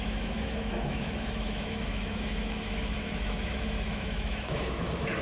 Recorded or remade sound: remade